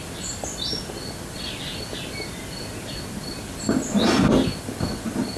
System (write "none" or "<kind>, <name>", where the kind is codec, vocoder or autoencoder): none